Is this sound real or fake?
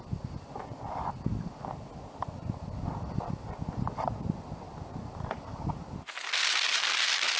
real